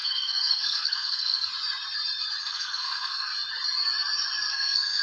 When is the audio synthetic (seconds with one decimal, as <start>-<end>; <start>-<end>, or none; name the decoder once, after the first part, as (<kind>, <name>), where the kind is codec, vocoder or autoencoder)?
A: 0.0-1.5 (codec, SNAC); 2.4-3.3; 4.5-5.0